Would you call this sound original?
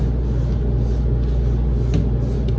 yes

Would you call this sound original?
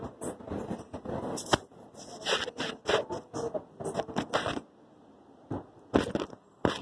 yes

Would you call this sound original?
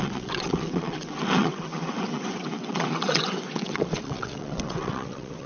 no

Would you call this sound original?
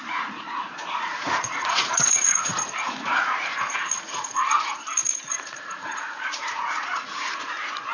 no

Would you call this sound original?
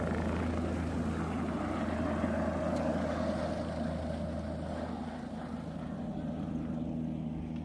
yes